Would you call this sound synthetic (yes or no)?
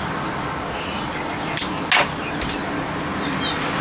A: no